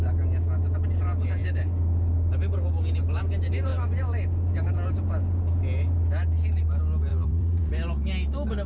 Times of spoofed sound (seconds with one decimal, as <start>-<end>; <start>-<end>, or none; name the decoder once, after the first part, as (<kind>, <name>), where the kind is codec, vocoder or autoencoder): 7.1-7.7 (vocoder, Vocos)